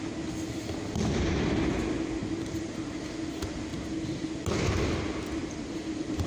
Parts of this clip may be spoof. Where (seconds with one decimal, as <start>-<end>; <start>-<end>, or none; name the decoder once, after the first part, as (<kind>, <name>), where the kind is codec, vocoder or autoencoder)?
2.2-3.0 (vocoder, BigVGAN v2); 3.7-4.3; 5.4-6.3